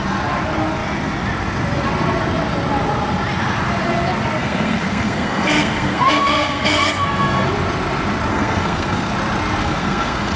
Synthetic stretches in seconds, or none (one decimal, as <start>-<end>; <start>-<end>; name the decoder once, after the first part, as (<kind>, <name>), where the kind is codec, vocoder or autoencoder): 4.4-7.5 (codec, SNAC); 8.3-9.1; 9.6-10.4